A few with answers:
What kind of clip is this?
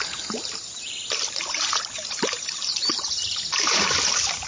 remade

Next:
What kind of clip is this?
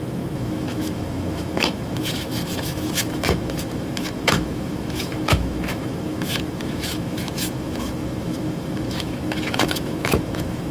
remade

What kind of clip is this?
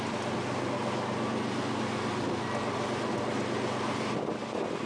recorded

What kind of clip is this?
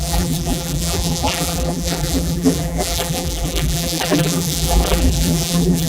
remade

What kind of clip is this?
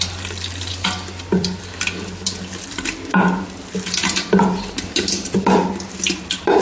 recorded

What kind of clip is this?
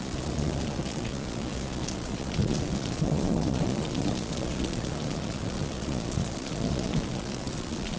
remade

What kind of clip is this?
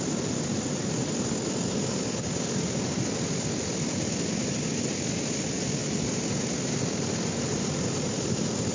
recorded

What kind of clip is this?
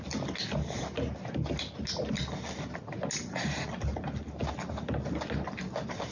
recorded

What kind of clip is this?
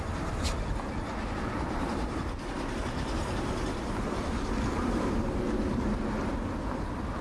recorded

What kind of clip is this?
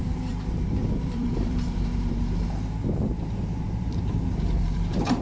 remade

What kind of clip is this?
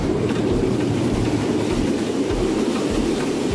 remade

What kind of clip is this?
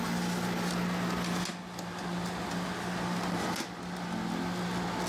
recorded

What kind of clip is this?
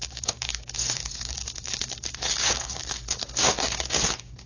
remade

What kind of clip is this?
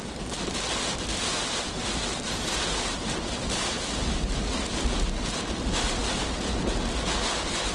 recorded